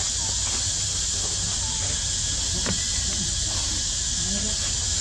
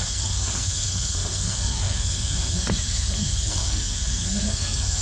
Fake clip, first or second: second